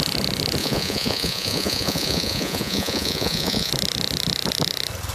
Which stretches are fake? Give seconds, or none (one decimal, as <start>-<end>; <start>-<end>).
0.6-3.7